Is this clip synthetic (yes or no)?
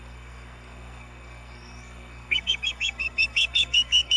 yes